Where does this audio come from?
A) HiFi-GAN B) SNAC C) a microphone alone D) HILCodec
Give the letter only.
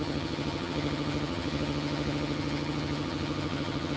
A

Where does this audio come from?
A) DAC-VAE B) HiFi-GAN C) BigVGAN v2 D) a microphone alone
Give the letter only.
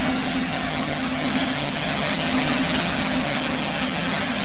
B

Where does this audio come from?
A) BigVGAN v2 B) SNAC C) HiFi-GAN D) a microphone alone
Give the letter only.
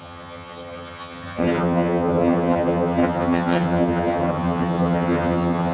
C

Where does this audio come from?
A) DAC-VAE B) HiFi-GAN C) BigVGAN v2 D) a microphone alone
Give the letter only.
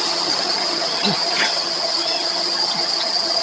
B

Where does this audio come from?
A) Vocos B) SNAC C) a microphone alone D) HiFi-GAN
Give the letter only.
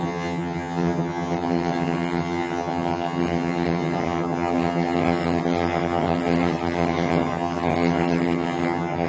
D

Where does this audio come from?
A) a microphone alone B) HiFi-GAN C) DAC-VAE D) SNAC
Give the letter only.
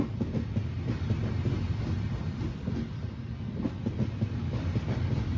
A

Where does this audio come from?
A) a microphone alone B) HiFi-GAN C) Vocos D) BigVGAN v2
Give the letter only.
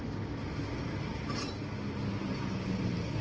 A